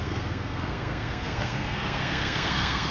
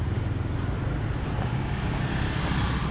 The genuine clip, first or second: second